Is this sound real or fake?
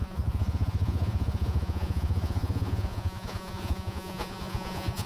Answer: fake